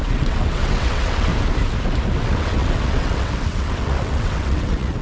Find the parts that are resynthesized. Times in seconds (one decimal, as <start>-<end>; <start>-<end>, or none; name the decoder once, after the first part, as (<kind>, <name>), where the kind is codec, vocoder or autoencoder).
0.0-1.3 (vocoder, WaveNeXt); 2.2-5.0